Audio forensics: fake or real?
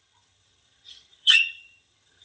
fake